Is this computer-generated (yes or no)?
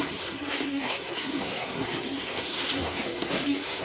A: yes